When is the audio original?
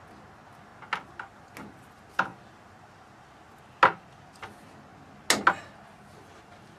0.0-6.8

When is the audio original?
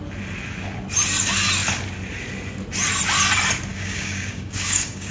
0.0-3.7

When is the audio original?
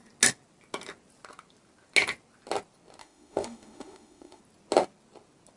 0.0-3.0; 4.4-5.6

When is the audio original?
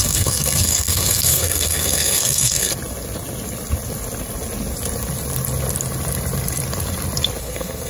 2.7-7.4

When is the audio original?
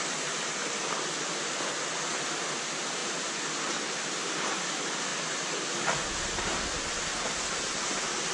0.0-8.3